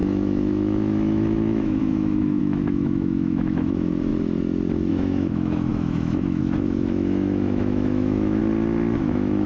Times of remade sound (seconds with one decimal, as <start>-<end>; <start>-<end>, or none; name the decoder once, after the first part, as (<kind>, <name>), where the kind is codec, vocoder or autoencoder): 0.0-4.1 (autoencoder, DAC-VAE); 4.9-8.4; 9.0-9.5